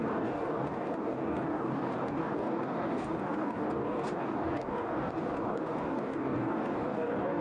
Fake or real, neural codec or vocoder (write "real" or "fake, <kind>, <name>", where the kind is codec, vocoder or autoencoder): fake, codec, DAC